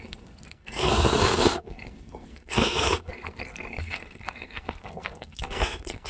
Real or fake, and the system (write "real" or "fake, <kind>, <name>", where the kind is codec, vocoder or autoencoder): fake, codec, SNAC